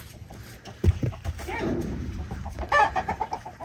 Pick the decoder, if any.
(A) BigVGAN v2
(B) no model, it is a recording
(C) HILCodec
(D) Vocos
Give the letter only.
A